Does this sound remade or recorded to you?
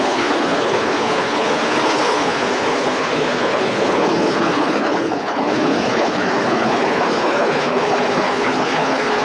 remade